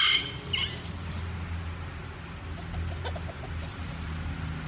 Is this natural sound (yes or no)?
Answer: yes